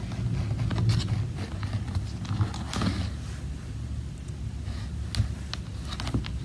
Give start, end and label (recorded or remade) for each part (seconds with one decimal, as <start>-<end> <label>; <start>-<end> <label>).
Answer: 0.0-6.4 recorded